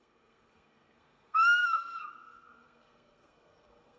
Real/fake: fake